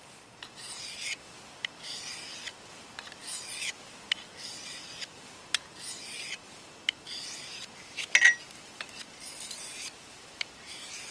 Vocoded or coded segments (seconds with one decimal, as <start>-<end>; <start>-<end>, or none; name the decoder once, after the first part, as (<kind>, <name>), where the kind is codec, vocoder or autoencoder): none